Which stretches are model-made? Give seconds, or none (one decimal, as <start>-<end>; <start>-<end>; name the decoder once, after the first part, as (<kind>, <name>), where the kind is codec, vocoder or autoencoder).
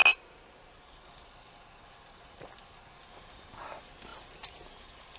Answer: none